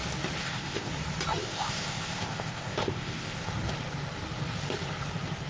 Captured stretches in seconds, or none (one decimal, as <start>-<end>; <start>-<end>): 0.0-0.4; 0.9-1.4; 3.5-5.5